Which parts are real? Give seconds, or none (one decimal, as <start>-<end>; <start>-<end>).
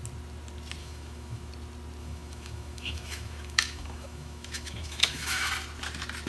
0.0-0.8; 1.5-2.0; 5.5-6.3